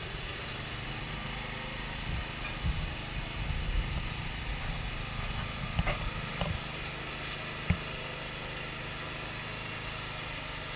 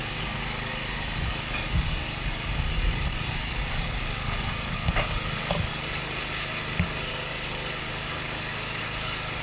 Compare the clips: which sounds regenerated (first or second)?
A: second